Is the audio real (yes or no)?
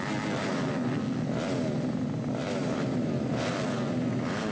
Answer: yes